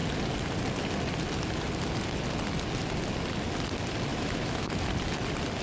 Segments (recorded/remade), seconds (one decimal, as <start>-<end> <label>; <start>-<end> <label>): 0.0-4.1 recorded; 4.1-4.7 remade; 4.7-5.6 recorded

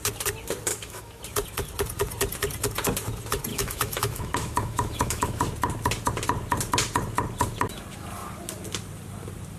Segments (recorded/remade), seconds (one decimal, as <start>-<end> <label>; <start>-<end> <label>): 0.0-0.7 recorded; 0.7-1.2 remade; 1.2-3.5 recorded; 3.5-5.4 remade; 5.4-9.6 recorded

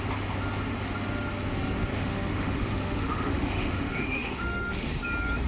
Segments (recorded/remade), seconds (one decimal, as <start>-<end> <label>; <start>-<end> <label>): 0.0-1.9 recorded; 1.9-4.9 remade; 4.9-5.5 recorded

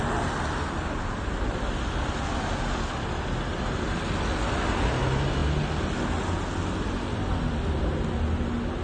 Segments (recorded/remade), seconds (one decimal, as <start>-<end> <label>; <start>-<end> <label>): 0.0-8.8 recorded

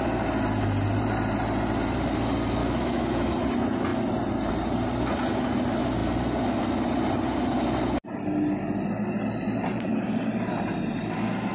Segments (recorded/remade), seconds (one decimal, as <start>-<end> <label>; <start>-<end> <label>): 0.0-2.6 recorded; 2.6-3.3 remade; 3.3-11.5 recorded

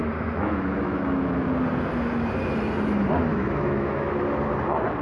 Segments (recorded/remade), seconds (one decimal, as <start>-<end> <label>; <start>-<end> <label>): 0.0-1.3 remade; 1.3-3.3 recorded; 3.3-4.1 remade; 4.1-5.0 recorded

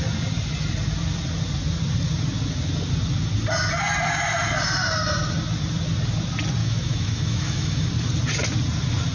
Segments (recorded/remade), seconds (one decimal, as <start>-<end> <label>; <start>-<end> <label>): 0.0-6.6 recorded; 6.6-7.9 remade; 7.9-9.1 recorded

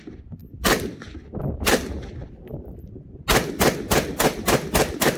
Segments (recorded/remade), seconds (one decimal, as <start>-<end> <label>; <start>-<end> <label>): 0.0-5.2 recorded